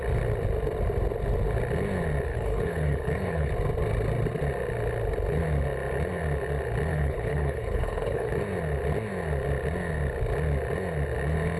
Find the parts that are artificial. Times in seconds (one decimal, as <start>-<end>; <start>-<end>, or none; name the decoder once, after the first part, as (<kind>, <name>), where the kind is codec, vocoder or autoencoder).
2.3-3.5 (codec, HILCodec); 6.9-8.3